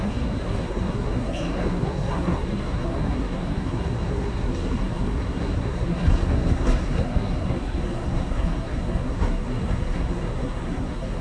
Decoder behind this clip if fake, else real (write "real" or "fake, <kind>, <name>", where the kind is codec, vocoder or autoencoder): fake, codec, SNAC